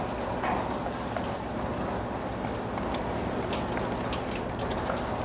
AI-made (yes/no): no